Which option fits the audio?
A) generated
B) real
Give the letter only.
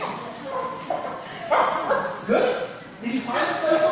B